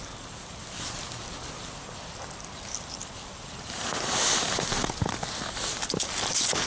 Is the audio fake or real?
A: real